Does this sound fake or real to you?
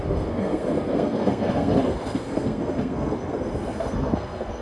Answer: fake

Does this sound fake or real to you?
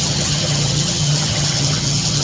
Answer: fake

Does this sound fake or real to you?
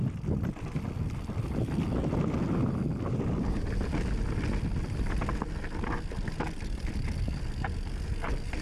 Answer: real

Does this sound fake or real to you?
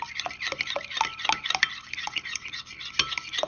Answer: real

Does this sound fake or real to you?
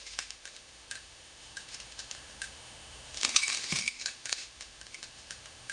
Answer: fake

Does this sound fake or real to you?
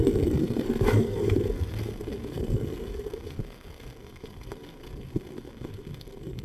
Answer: fake